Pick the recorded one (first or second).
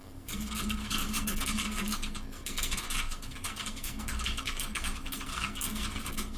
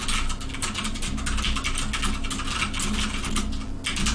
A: second